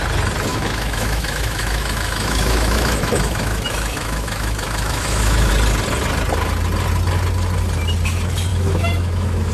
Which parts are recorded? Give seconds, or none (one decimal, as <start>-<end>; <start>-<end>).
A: 0.0-0.5; 5.5-8.5